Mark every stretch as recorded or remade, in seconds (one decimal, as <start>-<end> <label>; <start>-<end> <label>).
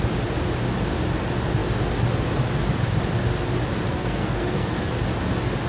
0.0-3.9 recorded; 3.9-4.9 remade; 4.9-5.7 recorded